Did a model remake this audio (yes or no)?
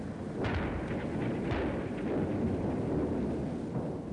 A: no